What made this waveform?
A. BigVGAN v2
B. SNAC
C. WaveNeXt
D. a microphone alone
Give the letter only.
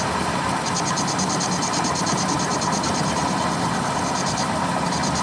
D